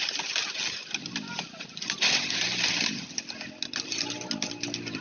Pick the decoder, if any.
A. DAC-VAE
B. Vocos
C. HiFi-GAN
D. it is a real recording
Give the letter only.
D